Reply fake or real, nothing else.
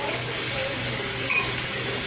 fake